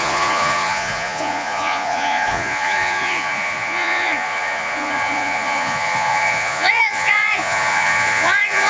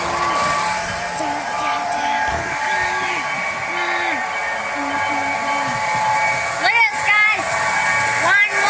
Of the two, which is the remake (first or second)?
first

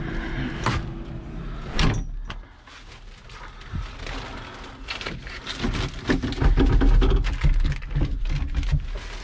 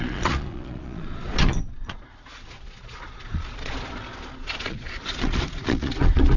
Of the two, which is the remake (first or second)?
second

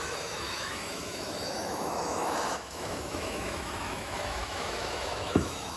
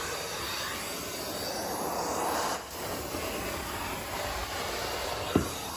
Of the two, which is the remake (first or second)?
first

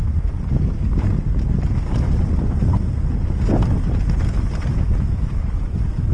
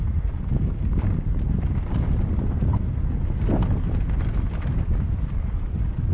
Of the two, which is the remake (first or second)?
second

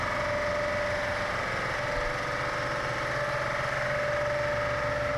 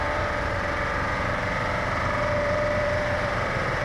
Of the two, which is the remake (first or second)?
second